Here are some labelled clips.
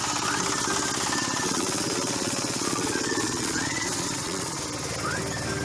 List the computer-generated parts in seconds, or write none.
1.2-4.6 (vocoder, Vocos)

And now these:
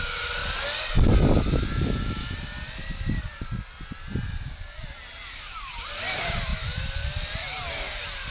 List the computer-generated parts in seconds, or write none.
0.0-0.4 (vocoder, BigVGAN v2); 5.4-8.3

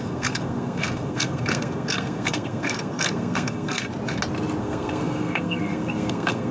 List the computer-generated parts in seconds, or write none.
0.0-3.9 (codec, SNAC); 4.6-6.5

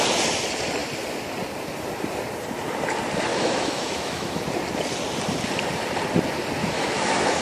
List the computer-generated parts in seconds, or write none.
3.3-4.4 (autoencoder, DAC-VAE); 6.6-7.4

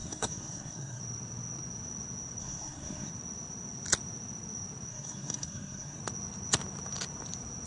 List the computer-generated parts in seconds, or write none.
0.0-1.0 (codec, SNAC); 2.4-3.1; 4.9-6.0

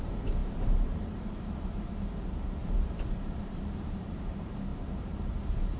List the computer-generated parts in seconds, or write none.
0.0-5.8 (vocoder, BigVGAN v2)

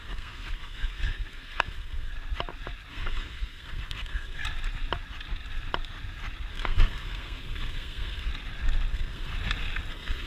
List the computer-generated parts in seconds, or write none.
0.0-2.1 (codec, SNAC); 2.9-4.4; 6.5-8.3; 8.9-9.3; 9.9-10.3

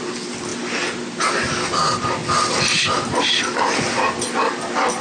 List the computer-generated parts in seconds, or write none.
none